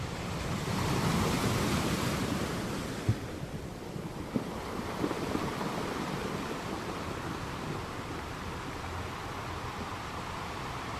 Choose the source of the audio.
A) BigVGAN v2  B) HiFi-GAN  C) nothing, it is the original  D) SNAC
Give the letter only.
A